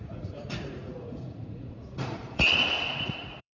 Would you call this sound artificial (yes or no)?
yes